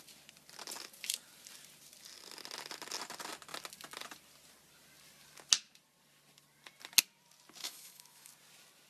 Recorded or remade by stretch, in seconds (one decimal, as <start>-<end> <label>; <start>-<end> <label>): 0.0-7.6 recorded; 7.6-8.3 remade; 8.3-8.9 recorded